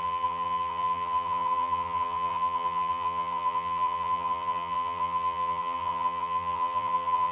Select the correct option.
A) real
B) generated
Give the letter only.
B